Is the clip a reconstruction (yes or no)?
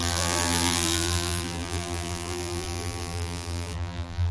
yes